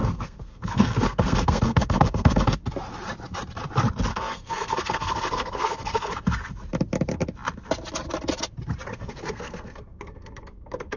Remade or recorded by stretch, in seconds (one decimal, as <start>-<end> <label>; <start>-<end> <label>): 0.0-2.6 remade; 2.6-4.1 recorded; 4.1-6.1 remade; 6.1-8.9 recorded; 8.9-11.0 remade